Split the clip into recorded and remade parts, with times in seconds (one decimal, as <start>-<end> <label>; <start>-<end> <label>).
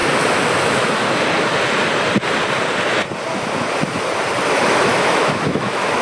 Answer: 0.0-0.6 recorded; 0.6-1.0 remade; 1.0-4.5 recorded; 4.5-6.0 remade